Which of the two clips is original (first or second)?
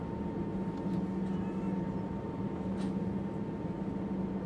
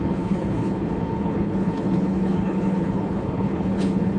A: first